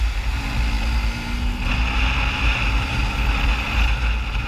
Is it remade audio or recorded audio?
recorded